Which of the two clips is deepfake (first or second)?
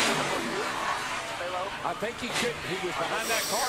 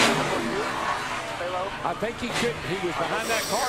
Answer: first